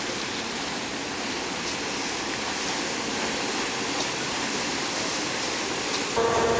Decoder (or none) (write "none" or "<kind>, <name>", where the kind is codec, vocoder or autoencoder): none